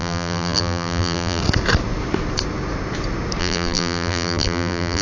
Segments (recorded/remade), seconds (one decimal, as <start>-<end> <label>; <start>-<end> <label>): 0.0-1.4 remade; 1.4-3.4 recorded; 3.4-5.0 remade